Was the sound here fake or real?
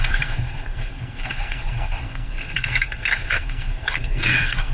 fake